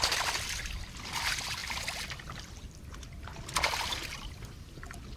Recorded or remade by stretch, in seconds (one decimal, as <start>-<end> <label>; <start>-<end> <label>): 0.0-5.2 recorded